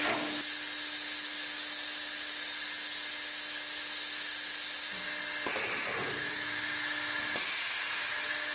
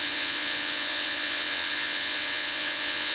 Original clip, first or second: first